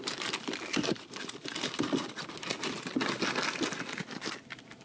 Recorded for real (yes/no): yes